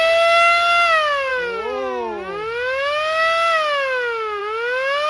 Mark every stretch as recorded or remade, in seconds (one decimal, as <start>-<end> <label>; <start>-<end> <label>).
0.0-5.1 recorded